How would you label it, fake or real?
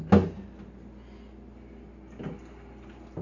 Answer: real